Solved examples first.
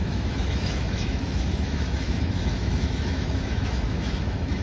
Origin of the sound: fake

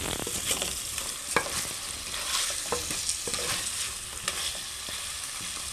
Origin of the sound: real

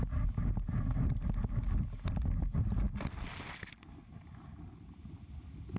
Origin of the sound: real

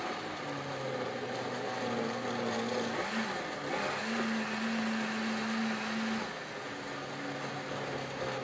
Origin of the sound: real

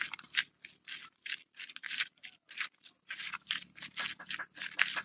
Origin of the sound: real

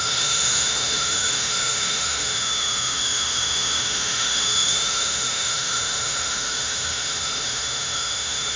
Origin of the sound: fake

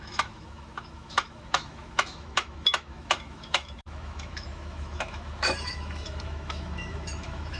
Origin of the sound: fake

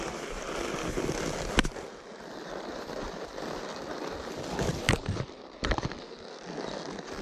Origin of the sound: real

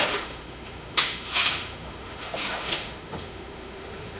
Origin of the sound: fake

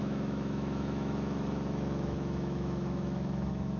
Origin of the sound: fake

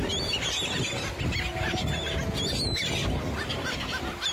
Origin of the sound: real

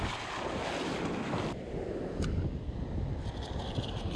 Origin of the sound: real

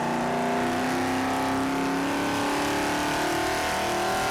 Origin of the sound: real